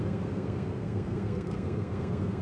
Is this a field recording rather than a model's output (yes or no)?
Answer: no